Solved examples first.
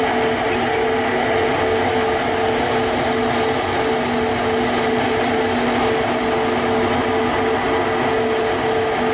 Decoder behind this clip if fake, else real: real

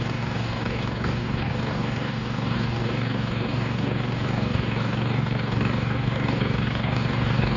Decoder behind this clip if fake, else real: fake, codec, DAC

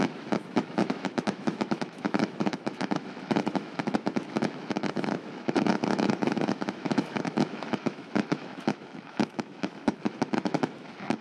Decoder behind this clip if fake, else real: fake, autoencoder, DAC-VAE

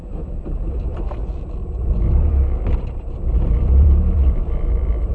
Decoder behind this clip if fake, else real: fake, vocoder, BigVGAN v2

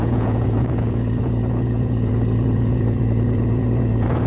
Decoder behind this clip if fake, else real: fake, vocoder, Vocos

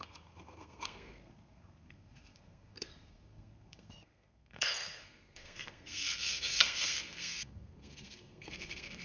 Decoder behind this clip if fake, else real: fake, codec, SNAC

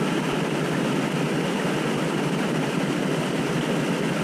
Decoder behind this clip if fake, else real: real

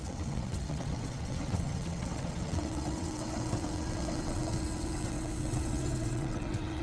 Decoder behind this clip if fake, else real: fake, vocoder, WaveNeXt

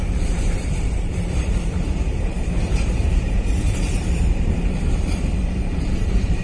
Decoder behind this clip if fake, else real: fake, vocoder, BigVGAN v2